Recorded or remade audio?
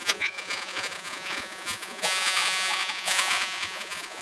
remade